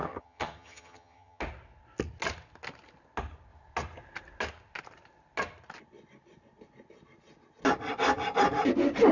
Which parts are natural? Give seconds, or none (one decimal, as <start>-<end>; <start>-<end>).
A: 1.4-9.1